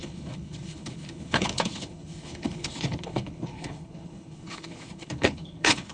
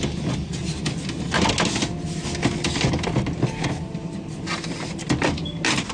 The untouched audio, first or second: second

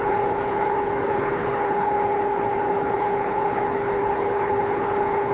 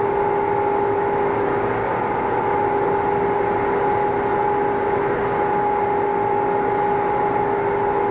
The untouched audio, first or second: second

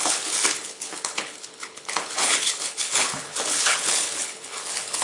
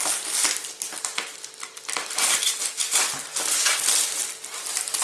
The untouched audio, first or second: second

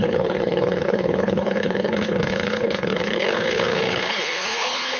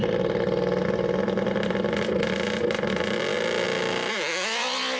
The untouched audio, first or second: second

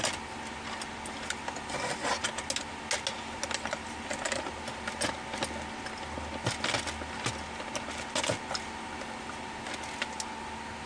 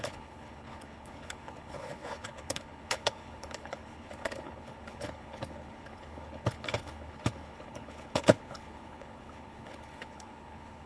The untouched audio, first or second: first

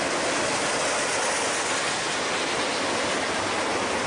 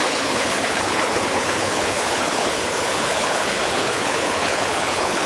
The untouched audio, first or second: first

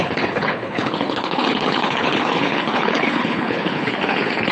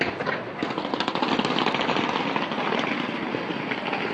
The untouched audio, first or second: second